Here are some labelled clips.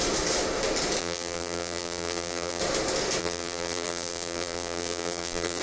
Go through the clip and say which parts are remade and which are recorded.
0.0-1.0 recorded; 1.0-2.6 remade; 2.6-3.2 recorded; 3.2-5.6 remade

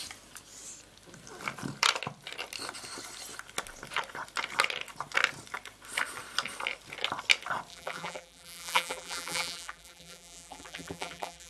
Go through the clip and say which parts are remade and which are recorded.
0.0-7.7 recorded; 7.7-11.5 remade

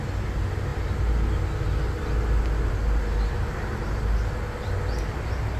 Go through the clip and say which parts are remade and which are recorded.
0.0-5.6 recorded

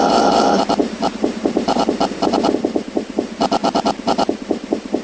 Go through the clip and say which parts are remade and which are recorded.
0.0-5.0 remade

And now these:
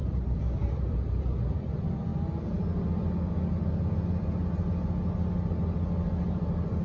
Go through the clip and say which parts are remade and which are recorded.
0.0-2.1 remade; 2.1-6.2 recorded; 6.2-6.8 remade